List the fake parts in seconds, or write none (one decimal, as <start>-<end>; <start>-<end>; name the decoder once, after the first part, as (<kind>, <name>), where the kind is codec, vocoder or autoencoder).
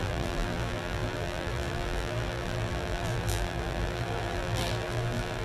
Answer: 0.0-5.4 (vocoder, BigVGAN v2)